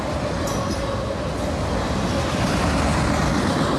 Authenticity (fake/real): real